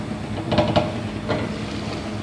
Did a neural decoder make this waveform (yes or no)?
no